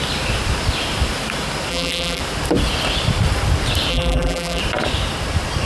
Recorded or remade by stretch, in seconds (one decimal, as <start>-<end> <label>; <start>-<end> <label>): 0.0-1.7 recorded; 1.7-2.2 remade; 2.2-3.9 recorded; 3.9-4.6 remade; 4.6-5.7 recorded